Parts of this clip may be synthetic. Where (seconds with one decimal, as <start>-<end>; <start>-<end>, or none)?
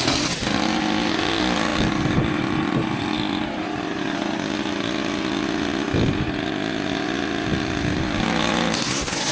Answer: none